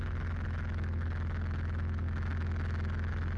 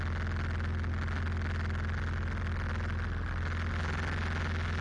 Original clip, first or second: second